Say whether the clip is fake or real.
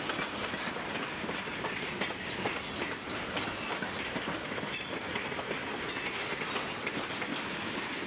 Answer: real